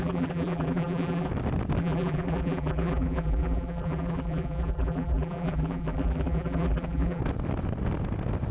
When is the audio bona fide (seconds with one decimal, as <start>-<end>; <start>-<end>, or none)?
1.3-1.8; 7.2-8.5